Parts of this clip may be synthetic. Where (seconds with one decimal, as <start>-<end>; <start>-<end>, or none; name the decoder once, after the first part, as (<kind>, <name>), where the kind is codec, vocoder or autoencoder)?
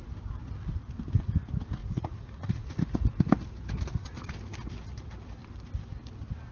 1.8-3.0 (vocoder, Vocos)